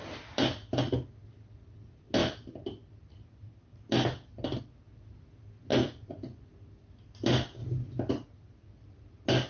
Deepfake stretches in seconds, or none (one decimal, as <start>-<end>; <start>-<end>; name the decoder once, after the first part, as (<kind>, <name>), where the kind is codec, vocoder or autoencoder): 5.7-6.5 (vocoder, Vocos)